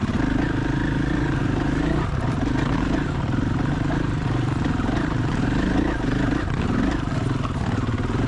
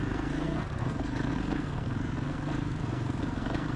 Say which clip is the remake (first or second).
second